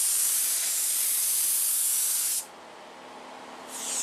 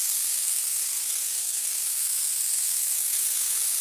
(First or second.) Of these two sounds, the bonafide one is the first